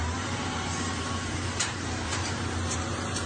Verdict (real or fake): fake